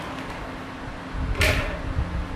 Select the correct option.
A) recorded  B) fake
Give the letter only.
A